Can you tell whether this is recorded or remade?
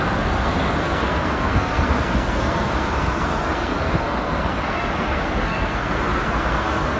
remade